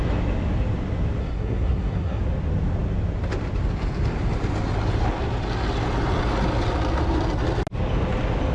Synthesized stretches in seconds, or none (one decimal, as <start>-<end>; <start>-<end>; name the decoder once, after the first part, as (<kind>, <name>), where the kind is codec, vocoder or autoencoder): 1.2-2.2 (codec, SNAC)